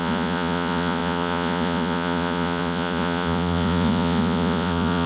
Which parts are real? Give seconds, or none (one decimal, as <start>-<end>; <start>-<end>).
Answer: none